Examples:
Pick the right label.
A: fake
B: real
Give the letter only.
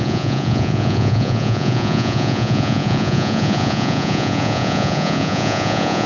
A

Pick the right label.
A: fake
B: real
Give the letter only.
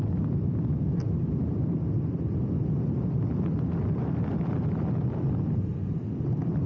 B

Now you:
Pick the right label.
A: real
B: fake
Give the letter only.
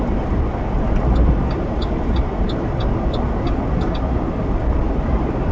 A